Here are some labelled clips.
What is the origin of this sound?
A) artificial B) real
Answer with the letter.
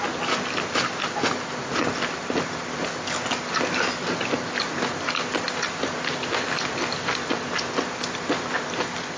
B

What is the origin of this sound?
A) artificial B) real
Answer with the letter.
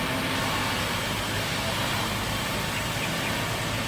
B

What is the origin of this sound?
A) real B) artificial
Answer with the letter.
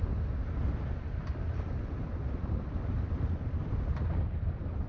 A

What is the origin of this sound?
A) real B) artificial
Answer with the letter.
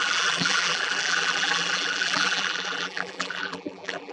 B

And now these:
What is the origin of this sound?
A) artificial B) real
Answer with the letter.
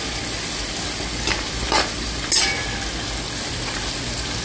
B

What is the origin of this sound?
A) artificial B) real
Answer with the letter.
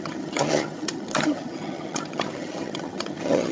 A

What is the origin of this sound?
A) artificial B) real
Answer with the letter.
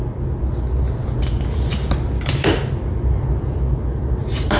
B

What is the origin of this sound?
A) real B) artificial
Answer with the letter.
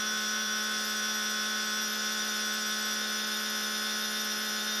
B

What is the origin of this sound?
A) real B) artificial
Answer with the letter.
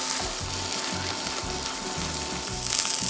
A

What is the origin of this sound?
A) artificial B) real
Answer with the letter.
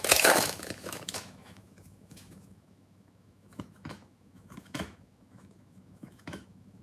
A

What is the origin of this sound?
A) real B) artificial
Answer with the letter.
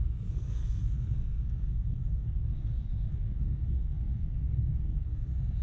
B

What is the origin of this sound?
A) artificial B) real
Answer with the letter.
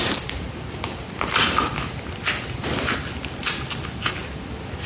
B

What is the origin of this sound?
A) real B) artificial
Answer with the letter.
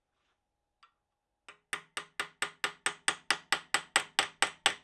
A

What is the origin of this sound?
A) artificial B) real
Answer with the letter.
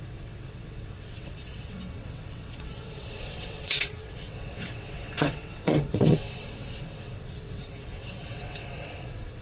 A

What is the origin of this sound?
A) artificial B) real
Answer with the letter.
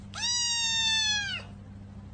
B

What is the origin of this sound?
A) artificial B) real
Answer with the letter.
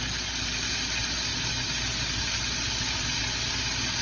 B